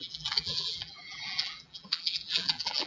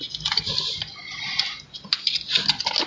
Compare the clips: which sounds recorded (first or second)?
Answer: second